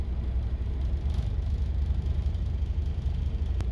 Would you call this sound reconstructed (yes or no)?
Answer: yes